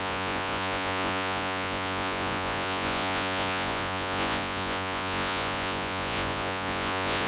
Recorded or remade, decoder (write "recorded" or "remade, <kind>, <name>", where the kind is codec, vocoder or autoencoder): remade, vocoder, Vocos